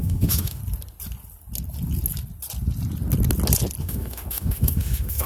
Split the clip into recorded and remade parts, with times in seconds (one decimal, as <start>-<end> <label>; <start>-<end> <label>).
0.0-0.6 remade; 0.6-3.8 recorded; 3.8-5.3 remade